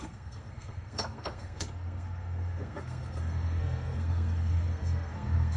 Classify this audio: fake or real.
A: fake